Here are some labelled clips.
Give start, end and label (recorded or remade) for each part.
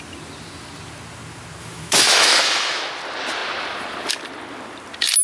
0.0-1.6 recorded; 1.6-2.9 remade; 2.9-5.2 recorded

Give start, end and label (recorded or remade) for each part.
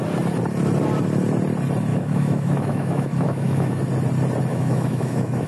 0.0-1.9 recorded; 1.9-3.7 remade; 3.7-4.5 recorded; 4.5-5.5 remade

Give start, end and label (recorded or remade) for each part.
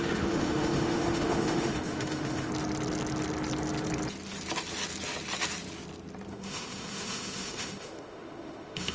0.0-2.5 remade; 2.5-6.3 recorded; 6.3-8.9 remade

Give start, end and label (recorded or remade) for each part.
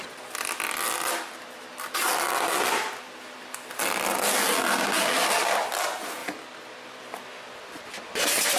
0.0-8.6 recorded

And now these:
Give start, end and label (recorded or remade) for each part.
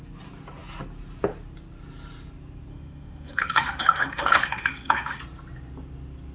0.0-2.7 recorded; 2.7-5.2 remade; 5.2-6.3 recorded